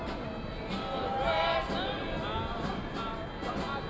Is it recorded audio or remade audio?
recorded